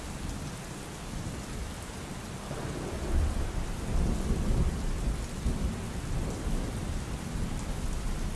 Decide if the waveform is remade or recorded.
recorded